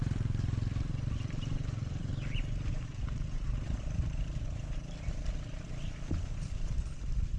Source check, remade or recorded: remade